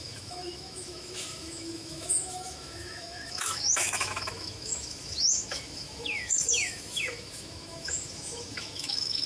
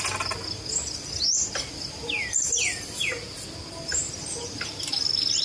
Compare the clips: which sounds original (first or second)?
second